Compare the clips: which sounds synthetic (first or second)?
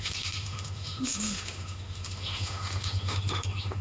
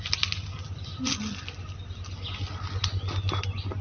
first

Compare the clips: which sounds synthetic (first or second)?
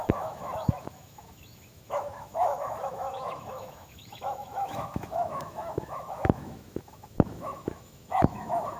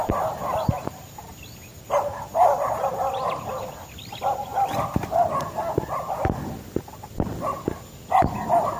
first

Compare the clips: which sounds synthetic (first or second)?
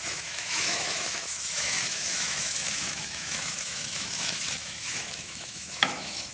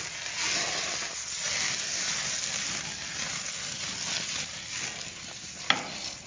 first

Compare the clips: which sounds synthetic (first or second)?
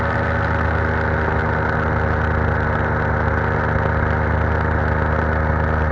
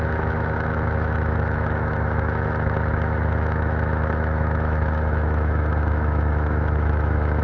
second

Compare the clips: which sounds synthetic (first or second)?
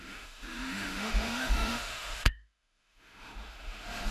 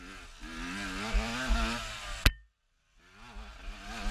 first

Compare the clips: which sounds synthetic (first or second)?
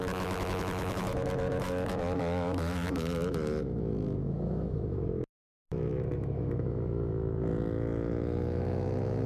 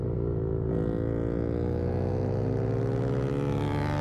first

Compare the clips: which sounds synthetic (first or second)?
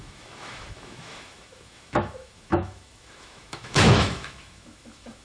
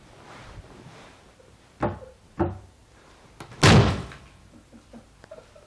first